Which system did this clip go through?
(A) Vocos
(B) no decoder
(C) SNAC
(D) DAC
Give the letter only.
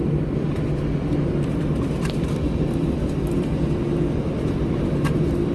B